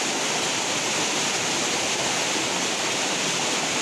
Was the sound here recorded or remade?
recorded